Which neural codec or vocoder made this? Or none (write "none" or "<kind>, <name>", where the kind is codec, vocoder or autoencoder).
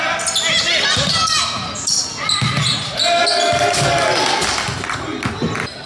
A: none